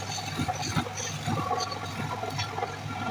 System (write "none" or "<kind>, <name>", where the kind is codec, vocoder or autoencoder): none